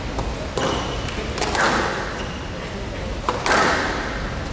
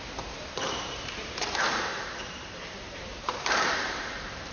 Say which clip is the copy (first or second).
second